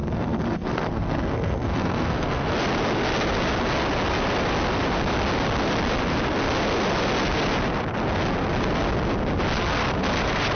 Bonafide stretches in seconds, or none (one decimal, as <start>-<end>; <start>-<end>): 2.5-10.6